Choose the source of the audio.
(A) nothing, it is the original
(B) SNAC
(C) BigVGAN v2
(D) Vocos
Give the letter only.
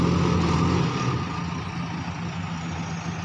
A